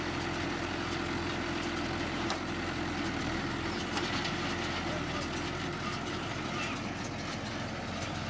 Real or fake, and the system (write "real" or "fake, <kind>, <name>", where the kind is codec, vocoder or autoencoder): real